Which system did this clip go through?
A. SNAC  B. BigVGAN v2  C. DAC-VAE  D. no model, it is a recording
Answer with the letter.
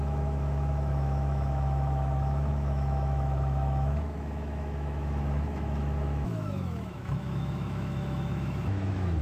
C